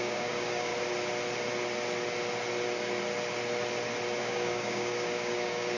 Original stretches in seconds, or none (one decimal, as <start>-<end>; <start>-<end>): 0.7-4.2